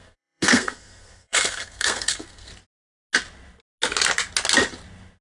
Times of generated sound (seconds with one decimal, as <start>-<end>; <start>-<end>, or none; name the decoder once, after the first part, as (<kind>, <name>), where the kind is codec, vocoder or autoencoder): 0.0-2.5 (codec, SNAC)